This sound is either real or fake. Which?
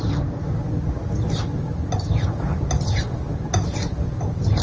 real